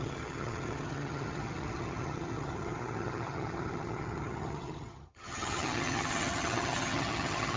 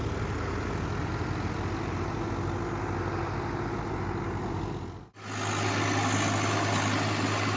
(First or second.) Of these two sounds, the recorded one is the second